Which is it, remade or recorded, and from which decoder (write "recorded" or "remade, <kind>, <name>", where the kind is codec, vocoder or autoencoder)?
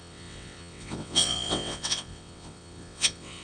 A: remade, vocoder, WaveNeXt